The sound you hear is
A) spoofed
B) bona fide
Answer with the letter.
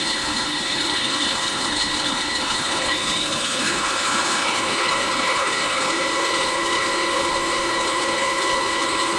A